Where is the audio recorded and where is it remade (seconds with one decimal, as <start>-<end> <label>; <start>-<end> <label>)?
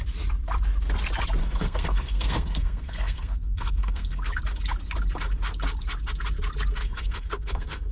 0.0-1.4 recorded; 1.4-4.3 remade; 4.3-6.8 recorded; 6.8-7.9 remade